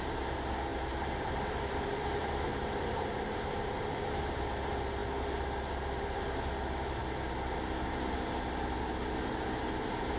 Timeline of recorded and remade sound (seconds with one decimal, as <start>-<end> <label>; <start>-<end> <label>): 0.0-0.7 recorded; 0.7-4.3 remade; 4.3-10.2 recorded